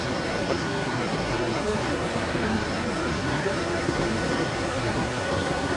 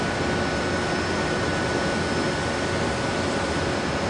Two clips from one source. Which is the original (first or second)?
second